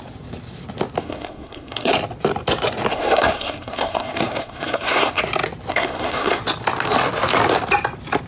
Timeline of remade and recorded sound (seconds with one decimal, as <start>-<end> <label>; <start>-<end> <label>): 0.0-1.0 recorded; 1.0-1.9 remade; 1.9-2.9 recorded; 2.9-5.2 remade; 5.2-5.7 recorded; 5.7-6.4 remade; 6.4-8.3 recorded